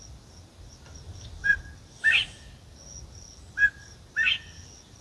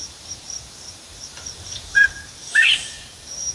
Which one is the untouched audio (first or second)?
first